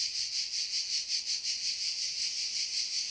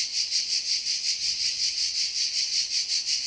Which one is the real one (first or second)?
first